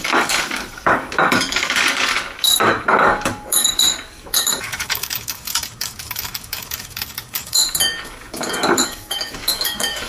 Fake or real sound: fake